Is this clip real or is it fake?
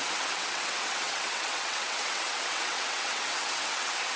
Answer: fake